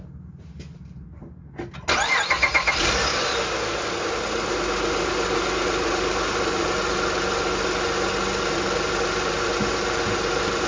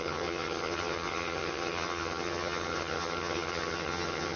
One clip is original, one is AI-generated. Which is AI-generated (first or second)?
second